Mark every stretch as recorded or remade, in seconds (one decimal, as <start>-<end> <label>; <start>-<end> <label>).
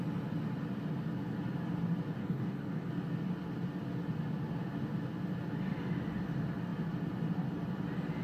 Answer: 0.0-2.2 recorded; 2.2-2.9 remade; 2.9-8.2 recorded